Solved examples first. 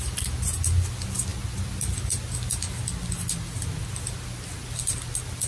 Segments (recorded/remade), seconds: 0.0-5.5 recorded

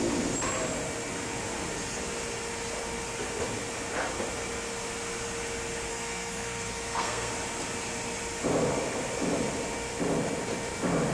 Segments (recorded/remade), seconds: 0.0-5.9 recorded; 5.9-7.3 remade; 7.3-11.1 recorded

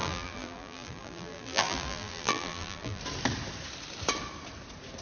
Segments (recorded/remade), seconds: 0.0-3.0 remade; 3.0-5.0 recorded